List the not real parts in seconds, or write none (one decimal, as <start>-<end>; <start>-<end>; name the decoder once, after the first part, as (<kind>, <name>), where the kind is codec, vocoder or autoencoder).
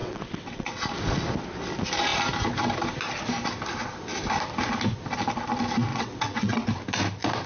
0.0-0.8 (vocoder, WaveNeXt); 5.9-6.7